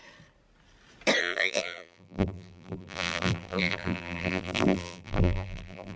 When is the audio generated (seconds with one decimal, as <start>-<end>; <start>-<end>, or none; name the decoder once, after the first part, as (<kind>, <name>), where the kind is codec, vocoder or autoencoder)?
1.2-6.0 (vocoder, BigVGAN v2)